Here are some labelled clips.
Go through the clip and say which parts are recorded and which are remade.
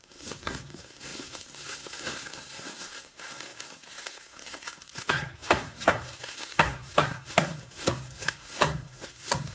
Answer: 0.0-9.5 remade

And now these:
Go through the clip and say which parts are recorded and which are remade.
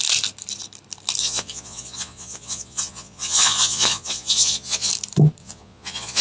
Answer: 0.0-1.2 recorded; 1.2-4.9 remade; 4.9-5.4 recorded; 5.4-6.2 remade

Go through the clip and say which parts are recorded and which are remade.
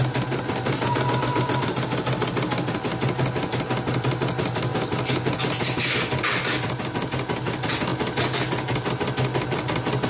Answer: 0.0-10.1 recorded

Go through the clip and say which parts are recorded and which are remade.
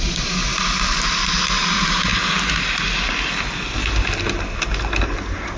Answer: 0.0-0.4 remade; 0.4-1.5 recorded; 1.5-2.1 remade; 2.1-5.6 recorded